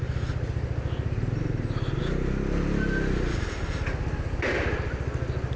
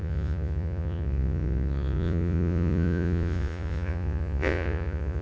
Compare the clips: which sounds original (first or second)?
first